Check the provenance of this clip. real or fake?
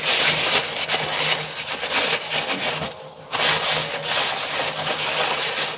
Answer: real